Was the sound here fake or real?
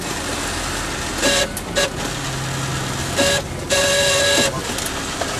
real